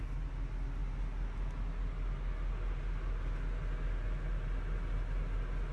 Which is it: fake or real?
real